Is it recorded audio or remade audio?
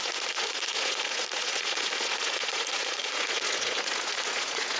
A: remade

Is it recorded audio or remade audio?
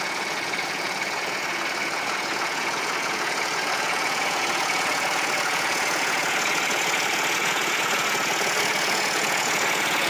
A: remade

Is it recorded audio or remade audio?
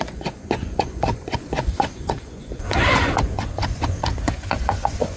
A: remade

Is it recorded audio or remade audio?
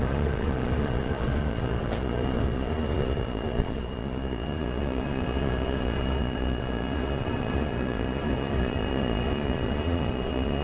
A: remade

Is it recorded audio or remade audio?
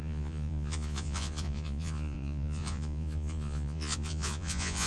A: remade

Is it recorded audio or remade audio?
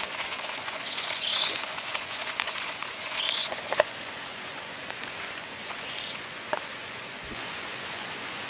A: remade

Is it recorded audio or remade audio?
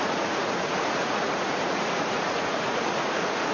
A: remade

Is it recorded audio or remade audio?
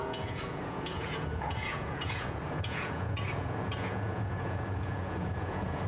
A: remade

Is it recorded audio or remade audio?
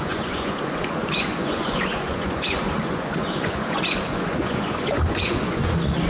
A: remade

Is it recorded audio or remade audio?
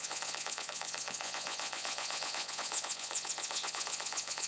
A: remade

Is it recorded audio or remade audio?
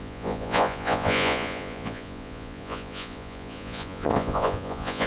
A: remade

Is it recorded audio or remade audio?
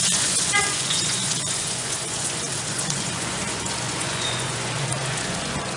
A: remade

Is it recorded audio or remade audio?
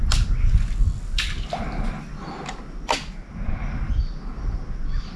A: recorded